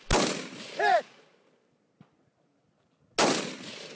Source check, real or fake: real